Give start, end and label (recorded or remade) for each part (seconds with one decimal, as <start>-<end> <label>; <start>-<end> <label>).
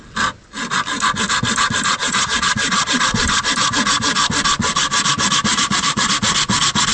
0.0-2.0 recorded; 2.0-3.0 remade; 3.0-5.5 recorded; 5.5-6.1 remade; 6.1-6.9 recorded